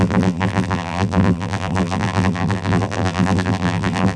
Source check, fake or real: fake